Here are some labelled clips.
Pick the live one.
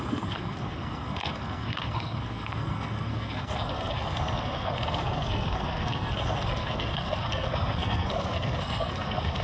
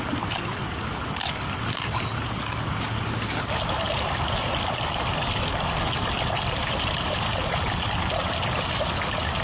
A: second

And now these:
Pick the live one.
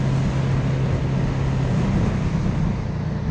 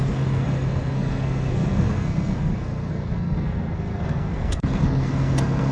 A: first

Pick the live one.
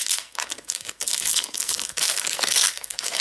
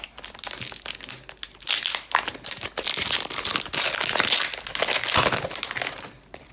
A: second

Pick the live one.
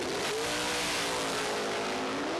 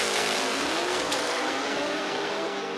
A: first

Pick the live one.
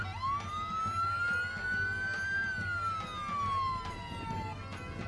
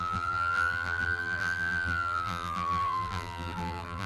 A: first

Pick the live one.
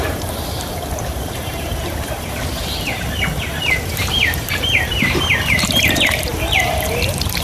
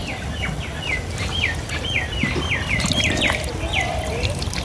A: second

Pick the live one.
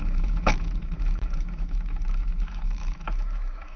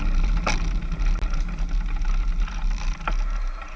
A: second